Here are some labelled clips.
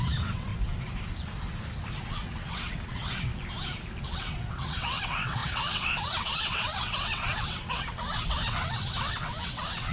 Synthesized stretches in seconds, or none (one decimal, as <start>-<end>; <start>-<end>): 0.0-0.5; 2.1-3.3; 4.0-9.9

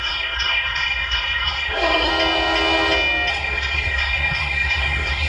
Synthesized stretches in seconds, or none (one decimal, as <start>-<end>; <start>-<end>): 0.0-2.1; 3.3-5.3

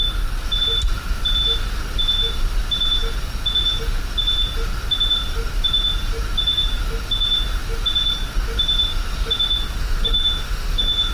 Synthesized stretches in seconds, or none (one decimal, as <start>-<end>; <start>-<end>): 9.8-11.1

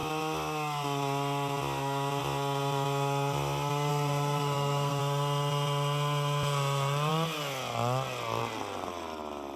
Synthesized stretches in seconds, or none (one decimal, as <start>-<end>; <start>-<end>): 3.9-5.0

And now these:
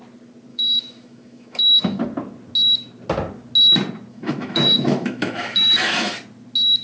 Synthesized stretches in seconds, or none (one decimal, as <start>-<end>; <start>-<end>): 0.5-2.0; 4.1-6.1

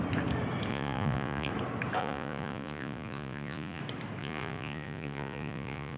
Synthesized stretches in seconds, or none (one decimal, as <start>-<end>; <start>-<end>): 0.7-1.5; 2.0-3.8; 4.2-6.0

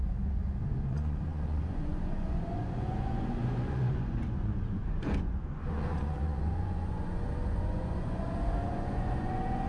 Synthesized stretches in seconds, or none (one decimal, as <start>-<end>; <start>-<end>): 0.0-9.7

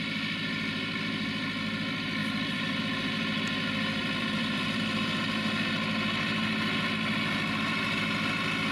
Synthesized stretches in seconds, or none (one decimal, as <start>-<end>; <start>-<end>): 2.2-2.8; 4.0-5.0